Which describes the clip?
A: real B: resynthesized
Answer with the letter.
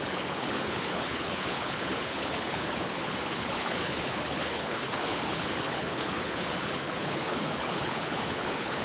B